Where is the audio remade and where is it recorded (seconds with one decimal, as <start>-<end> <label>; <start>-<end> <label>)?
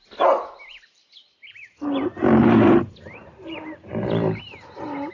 0.0-1.3 recorded; 1.3-4.4 remade; 4.4-5.1 recorded